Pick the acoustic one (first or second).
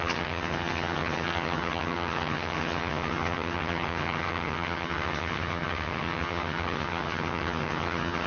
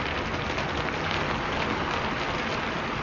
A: second